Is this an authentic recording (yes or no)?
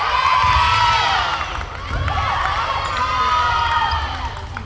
yes